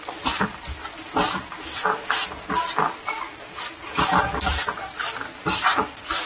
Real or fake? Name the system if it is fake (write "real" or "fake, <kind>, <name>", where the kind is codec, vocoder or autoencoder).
fake, vocoder, BigVGAN v2